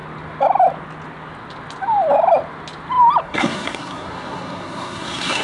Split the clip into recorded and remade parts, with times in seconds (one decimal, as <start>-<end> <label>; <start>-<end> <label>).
0.0-3.2 recorded; 3.2-5.4 remade